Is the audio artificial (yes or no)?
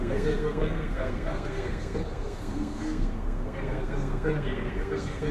yes